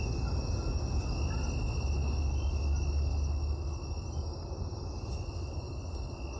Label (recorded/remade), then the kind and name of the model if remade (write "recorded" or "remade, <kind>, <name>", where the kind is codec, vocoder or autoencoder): recorded